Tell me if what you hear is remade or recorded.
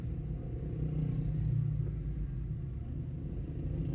recorded